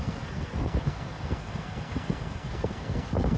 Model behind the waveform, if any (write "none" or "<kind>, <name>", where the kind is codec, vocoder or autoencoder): codec, SNAC